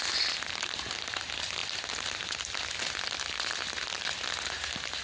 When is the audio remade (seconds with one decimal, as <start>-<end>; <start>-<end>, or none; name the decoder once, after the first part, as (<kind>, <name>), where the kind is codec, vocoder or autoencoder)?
none